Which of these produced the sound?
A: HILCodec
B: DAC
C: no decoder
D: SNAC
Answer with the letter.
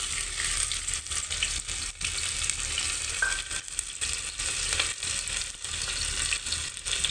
C